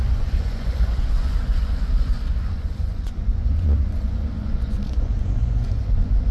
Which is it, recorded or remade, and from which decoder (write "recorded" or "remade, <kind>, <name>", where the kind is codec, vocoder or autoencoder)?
remade, vocoder, Vocos